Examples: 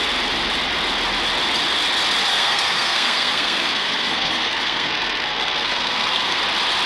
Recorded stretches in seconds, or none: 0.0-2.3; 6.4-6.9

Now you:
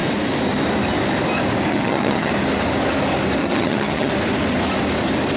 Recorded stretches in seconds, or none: 0.0-1.7; 2.3-3.4; 4.1-5.4